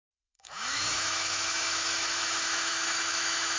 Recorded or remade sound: remade